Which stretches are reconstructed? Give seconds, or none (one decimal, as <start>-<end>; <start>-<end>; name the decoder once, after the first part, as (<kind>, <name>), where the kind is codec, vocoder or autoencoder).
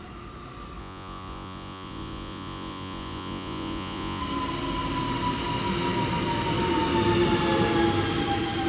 0.8-4.2 (vocoder, Vocos)